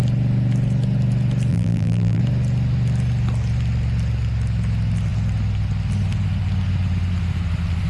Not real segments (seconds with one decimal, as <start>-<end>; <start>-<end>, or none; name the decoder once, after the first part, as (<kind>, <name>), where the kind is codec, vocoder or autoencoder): 1.5-2.2 (vocoder, BigVGAN v2)